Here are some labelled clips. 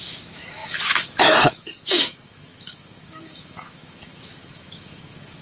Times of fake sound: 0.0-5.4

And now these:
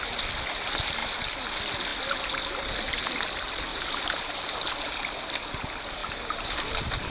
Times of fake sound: 3.7-4.3; 6.0-7.1